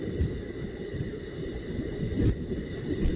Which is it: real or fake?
real